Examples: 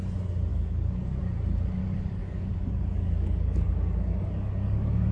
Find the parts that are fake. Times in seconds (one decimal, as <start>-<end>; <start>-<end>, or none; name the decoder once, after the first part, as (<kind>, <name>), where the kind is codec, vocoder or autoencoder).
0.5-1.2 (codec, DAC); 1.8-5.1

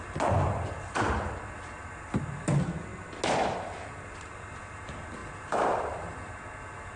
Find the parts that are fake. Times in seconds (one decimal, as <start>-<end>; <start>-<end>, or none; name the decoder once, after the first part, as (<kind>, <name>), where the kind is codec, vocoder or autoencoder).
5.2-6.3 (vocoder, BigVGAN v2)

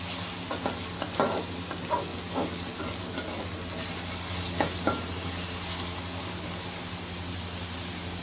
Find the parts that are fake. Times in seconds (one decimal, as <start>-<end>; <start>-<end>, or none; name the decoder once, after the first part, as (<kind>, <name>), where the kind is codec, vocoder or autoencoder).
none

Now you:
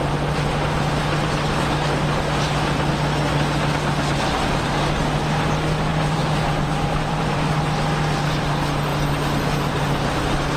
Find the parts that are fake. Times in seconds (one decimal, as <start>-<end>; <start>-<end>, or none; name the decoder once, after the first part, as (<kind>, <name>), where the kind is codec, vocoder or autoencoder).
5.9-7.5 (vocoder, BigVGAN v2)

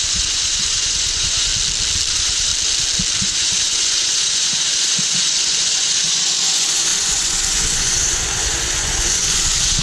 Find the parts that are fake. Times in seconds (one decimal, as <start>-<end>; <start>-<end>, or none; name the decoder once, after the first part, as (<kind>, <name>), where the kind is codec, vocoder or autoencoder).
0.0-1.5 (vocoder, Vocos); 2.1-2.5; 3.2-9.8

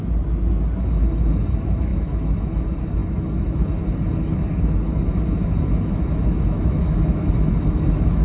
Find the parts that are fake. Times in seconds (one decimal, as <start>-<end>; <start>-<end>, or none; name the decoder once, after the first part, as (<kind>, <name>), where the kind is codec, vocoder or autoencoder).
0.8-8.2 (autoencoder, DAC-VAE)